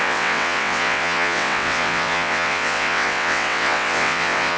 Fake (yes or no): yes